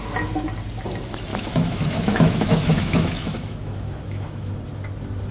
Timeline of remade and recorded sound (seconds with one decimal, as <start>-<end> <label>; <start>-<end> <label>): 0.0-1.3 recorded; 1.3-4.5 remade; 4.5-5.3 recorded